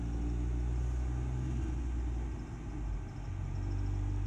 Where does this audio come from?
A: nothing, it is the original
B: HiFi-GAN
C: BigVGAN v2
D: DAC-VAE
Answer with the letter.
A